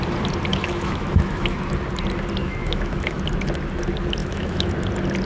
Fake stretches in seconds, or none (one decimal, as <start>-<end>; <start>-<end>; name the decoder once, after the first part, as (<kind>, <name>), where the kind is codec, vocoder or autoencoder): 0.5-1.6 (autoencoder, DAC-VAE); 2.4-3.2; 4.2-4.7